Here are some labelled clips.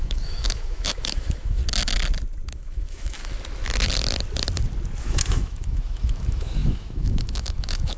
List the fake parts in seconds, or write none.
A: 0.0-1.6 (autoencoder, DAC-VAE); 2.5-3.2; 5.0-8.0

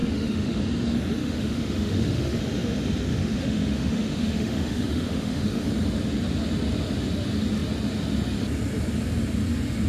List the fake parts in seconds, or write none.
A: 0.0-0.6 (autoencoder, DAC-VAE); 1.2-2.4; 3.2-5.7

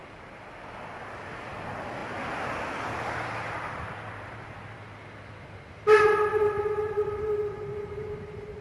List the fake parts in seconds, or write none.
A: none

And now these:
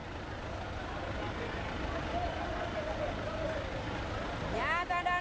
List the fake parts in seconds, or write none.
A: none

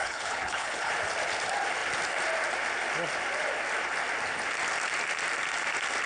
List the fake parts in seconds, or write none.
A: 0.0-0.9 (codec, HILCodec)

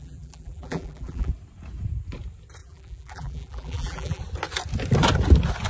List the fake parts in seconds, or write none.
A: 0.0-1.3 (vocoder, BigVGAN v2); 2.6-4.2

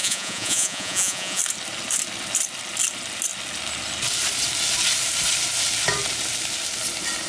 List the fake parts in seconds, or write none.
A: 0.0-1.4 (vocoder, Vocos)

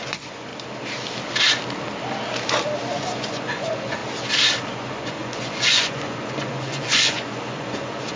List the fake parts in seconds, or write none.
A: 0.0-0.5 (vocoder, Vocos); 2.9-4.0; 4.7-8.2